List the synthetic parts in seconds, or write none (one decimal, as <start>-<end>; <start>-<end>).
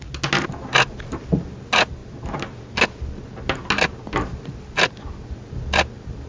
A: none